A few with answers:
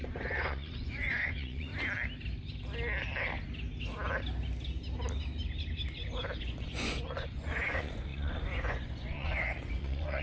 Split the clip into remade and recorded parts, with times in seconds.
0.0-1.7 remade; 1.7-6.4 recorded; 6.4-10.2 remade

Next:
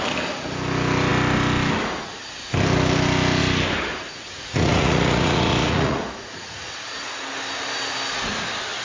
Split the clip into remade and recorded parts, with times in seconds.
0.0-3.9 recorded; 3.9-7.1 remade; 7.1-8.8 recorded

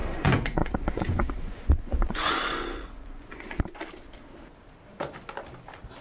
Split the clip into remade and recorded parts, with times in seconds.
0.0-3.6 remade; 3.6-6.0 recorded

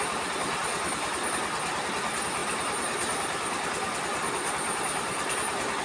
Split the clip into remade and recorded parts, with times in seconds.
0.0-5.8 recorded

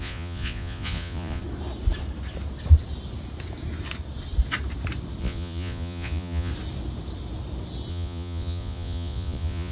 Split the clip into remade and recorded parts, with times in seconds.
0.0-1.4 remade; 1.4-5.2 recorded; 5.2-6.5 remade; 6.5-7.9 recorded; 7.9-9.7 remade